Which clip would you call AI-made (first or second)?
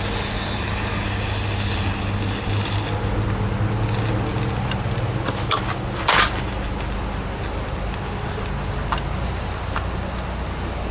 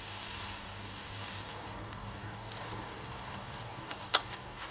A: second